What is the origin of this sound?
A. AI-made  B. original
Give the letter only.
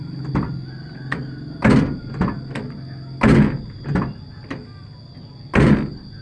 B